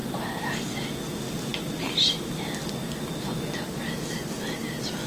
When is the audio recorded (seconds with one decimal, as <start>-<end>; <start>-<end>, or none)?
0.5-5.1